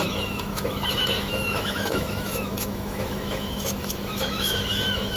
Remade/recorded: remade